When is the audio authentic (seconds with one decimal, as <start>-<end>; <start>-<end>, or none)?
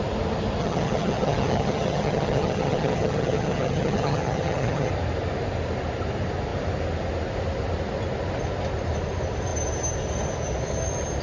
0.0-0.6; 4.9-11.2